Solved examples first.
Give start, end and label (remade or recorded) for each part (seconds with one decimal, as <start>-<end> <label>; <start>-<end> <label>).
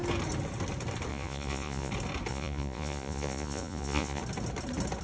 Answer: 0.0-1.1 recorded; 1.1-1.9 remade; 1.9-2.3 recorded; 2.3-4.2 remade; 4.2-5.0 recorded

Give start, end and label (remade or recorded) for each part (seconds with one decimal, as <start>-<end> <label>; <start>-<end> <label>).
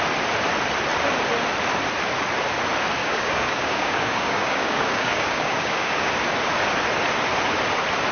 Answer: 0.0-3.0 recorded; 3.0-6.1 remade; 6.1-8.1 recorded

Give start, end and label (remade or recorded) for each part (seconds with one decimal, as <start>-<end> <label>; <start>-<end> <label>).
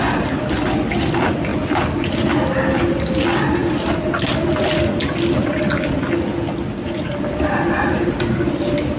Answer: 0.0-1.5 recorded; 1.5-2.8 remade; 2.8-9.0 recorded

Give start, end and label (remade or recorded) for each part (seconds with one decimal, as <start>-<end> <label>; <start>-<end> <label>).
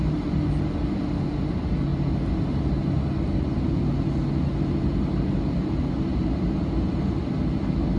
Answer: 0.0-8.0 recorded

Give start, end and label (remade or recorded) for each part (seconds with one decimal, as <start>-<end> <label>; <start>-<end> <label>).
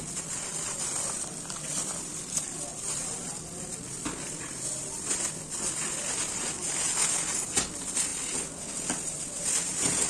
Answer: 0.0-10.1 recorded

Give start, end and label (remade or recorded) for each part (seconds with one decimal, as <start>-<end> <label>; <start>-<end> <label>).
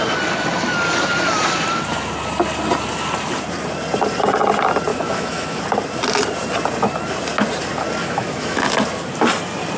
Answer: 0.0-4.9 recorded; 4.9-5.6 remade; 5.6-8.0 recorded; 8.0-8.6 remade; 8.6-9.8 recorded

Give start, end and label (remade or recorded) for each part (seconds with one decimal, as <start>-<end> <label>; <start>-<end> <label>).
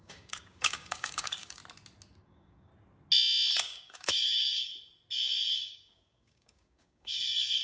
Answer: 0.0-1.6 remade; 1.6-2.2 recorded; 2.2-2.7 remade; 2.7-3.5 recorded; 3.5-4.7 remade; 4.7-5.5 recorded; 5.5-7.6 remade